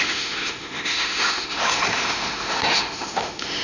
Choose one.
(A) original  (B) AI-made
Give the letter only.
B